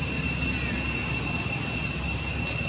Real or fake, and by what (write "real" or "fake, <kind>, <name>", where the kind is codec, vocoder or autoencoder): real